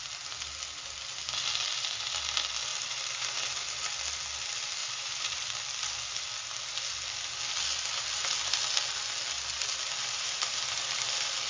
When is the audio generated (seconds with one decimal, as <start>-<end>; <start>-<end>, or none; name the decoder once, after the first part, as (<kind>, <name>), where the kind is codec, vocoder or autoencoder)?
2.7-3.9 (vocoder, BigVGAN v2); 4.8-5.9; 10.0-10.6